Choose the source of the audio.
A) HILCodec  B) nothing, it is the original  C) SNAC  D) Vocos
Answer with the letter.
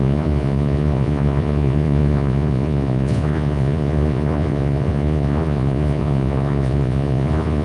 D